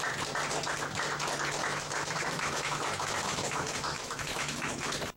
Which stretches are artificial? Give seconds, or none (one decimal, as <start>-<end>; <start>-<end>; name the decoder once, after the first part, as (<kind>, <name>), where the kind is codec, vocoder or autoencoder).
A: 1.6-4.7 (autoencoder, DAC-VAE)